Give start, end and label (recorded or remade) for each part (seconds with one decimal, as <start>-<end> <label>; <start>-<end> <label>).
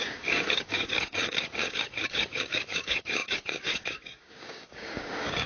0.0-5.5 remade